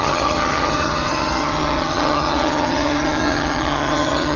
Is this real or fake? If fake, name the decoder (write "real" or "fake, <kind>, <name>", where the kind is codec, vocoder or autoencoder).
fake, vocoder, HiFi-GAN